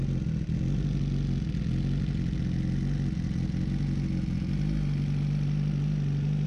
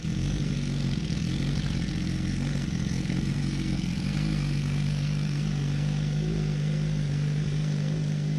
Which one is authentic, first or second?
first